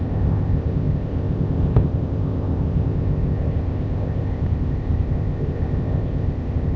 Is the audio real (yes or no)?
no